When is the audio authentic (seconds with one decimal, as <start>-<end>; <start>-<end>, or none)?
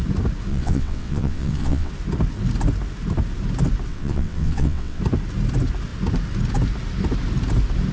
0.0-0.5; 1.9-3.9; 5.0-7.9